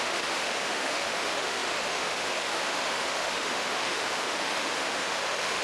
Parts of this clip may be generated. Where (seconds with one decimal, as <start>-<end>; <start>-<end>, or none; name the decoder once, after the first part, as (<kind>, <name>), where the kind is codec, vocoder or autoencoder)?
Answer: 0.0-5.6 (autoencoder, DAC-VAE)